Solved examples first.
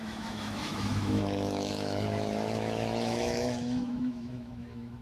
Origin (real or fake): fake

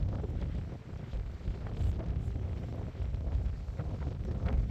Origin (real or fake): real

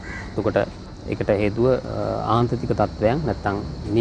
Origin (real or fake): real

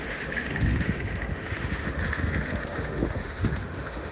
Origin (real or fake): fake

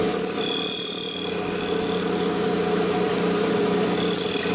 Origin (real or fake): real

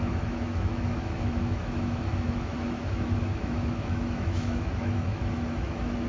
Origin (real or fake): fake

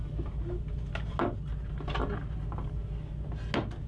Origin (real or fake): real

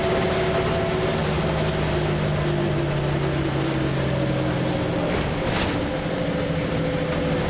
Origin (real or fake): real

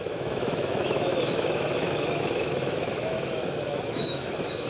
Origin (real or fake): fake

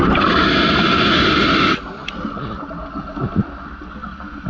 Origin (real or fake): real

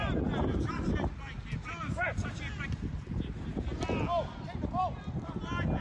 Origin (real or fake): real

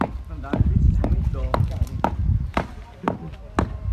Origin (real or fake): real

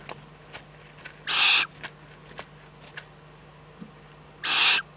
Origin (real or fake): real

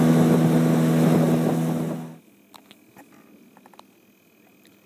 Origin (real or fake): real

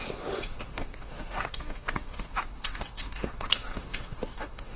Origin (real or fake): fake